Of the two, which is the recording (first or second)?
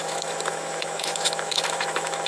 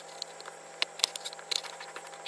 second